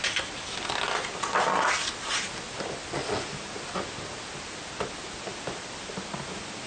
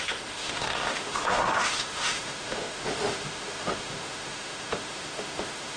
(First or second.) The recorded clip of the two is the first